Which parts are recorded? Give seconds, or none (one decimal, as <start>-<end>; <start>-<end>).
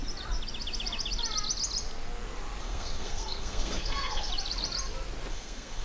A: 0.0-2.6; 4.3-5.3